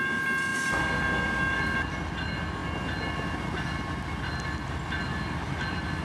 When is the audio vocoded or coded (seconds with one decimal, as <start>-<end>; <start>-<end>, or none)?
none